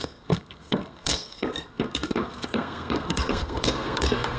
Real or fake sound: fake